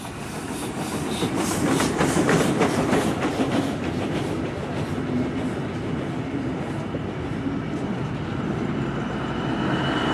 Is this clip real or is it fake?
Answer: real